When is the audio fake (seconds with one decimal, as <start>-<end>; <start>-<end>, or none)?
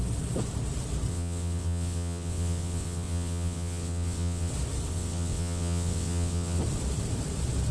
1.1-4.5; 4.9-6.6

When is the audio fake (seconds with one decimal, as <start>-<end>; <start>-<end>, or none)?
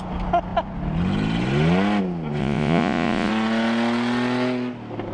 2.4-3.3